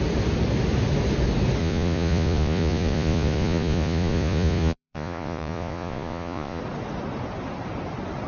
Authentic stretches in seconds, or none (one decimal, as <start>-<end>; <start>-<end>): 0.0-1.6; 6.6-8.3